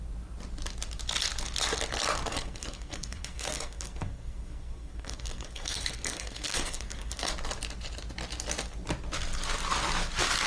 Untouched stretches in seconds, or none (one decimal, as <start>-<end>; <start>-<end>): 0.0-2.3; 7.3-10.5